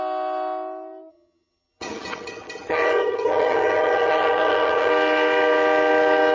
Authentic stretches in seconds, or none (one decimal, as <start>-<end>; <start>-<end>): 0.0-1.1; 4.9-6.3